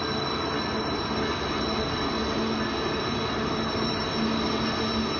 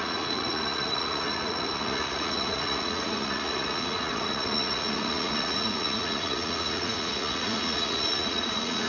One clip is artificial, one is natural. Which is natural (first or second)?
first